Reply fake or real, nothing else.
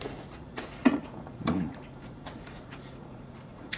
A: fake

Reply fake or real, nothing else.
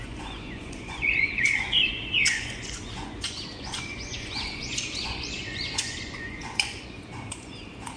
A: fake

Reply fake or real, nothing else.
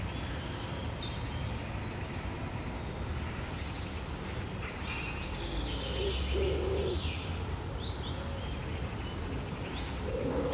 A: real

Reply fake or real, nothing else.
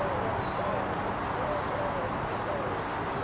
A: real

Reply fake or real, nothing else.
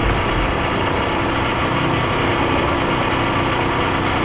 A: real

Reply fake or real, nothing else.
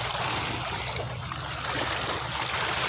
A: real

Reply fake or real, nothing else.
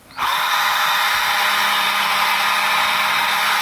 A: real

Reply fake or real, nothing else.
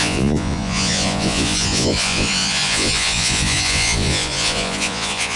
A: fake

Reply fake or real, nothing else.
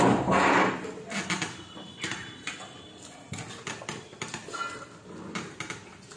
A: real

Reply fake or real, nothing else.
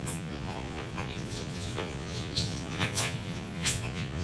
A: fake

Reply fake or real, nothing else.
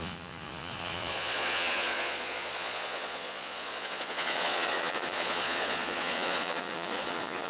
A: fake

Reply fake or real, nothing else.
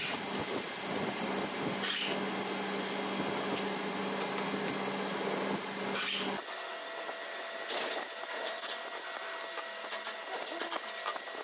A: real